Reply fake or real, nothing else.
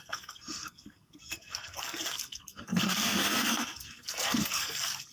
fake